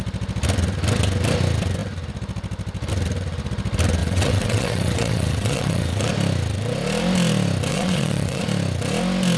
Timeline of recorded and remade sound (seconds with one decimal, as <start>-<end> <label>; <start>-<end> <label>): 0.0-4.0 recorded; 4.0-6.1 remade; 6.1-7.7 recorded; 7.7-8.4 remade; 8.4-9.4 recorded